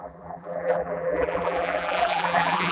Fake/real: fake